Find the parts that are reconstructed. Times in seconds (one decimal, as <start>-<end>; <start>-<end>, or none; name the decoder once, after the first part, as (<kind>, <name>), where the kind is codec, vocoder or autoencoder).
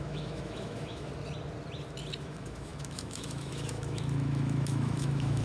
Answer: 0.0-1.1 (autoencoder, DAC-VAE); 2.2-5.4